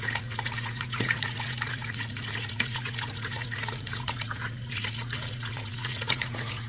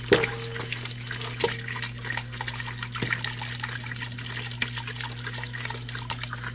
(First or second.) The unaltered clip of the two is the second